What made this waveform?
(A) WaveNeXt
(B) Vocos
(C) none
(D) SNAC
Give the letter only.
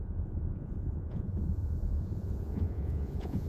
B